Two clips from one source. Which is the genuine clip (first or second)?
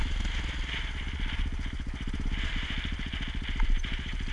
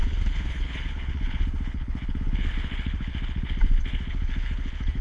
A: first